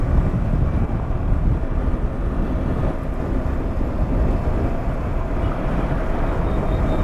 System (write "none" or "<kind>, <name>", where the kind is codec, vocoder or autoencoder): none